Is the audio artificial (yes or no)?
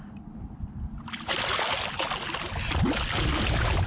no